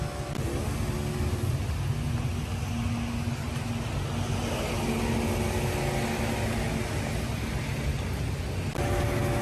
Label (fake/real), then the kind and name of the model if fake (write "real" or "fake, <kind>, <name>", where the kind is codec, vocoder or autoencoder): real